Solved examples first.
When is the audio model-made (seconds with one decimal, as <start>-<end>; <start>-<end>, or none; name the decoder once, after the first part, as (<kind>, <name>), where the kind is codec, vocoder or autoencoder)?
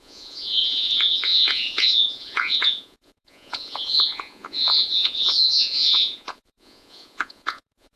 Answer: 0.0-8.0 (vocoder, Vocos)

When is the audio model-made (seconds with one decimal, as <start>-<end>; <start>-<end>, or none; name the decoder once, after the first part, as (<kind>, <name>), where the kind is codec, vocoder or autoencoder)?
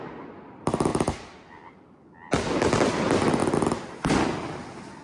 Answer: none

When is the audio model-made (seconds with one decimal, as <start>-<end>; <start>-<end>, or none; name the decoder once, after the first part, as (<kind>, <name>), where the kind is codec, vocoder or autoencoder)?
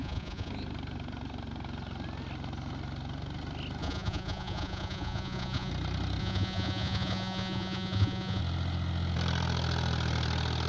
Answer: 0.0-0.5 (vocoder, Vocos); 3.8-5.7; 6.2-8.4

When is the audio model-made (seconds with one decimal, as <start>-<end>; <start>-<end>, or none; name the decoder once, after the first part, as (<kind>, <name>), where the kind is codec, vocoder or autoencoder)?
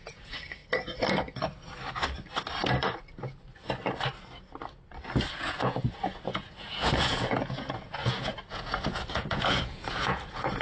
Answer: 0.0-0.6 (vocoder, Vocos); 5.3-10.6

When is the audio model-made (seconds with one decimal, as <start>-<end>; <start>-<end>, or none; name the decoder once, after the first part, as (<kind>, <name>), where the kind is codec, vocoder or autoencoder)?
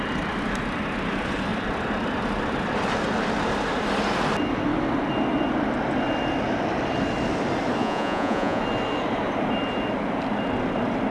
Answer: 7.8-8.6 (vocoder, Vocos)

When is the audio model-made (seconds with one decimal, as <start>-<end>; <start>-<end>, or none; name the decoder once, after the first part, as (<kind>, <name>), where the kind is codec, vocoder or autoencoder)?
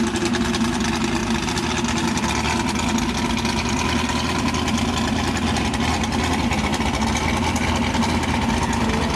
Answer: none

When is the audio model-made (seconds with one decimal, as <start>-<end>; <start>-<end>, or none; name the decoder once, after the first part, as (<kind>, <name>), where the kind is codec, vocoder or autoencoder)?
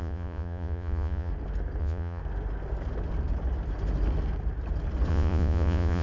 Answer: 0.0-1.3 (vocoder, Vocos); 1.8-2.2; 5.1-6.0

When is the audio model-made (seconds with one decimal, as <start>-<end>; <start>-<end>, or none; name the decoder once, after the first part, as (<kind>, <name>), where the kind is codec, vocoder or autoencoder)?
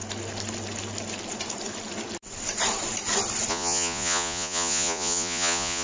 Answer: 3.5-5.8 (vocoder, Vocos)